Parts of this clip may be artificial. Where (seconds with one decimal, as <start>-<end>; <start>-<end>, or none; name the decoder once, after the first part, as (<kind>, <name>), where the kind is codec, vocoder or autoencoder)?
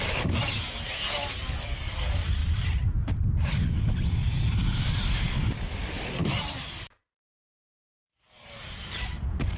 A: 2.4-3.1 (vocoder, BigVGAN v2); 6.2-7.5